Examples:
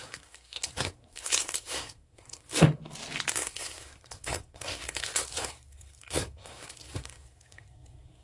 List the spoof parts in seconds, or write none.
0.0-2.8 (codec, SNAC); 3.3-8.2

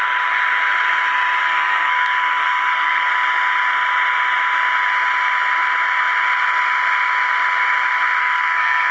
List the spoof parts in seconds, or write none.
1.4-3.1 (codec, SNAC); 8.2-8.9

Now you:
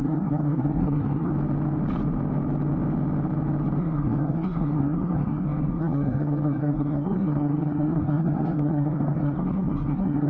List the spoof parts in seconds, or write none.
0.0-1.3 (codec, SNAC); 3.8-10.3